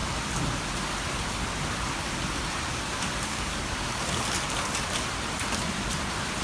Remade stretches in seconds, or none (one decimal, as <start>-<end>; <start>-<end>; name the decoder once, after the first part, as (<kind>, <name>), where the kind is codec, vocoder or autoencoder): 3.3-4.2 (codec, DAC)